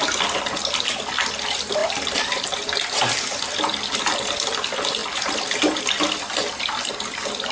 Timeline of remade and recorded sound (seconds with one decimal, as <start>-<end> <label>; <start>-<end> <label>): 0.0-1.8 recorded; 1.8-3.6 remade; 3.6-7.5 recorded